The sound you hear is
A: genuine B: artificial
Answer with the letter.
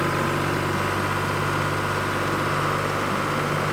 A